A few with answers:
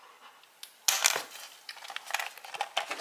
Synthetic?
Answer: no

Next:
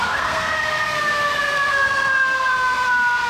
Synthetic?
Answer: yes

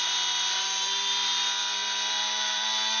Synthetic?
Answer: yes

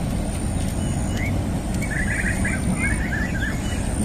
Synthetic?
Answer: no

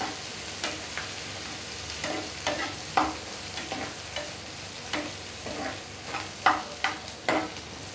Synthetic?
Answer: no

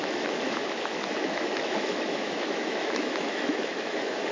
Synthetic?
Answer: yes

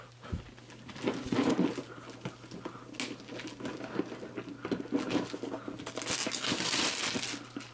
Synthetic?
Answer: no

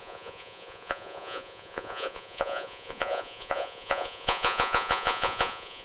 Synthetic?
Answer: yes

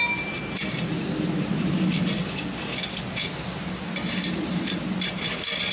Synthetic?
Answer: no